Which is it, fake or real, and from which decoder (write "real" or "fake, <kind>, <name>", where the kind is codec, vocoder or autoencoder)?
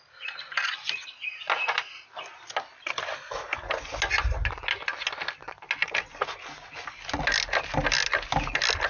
real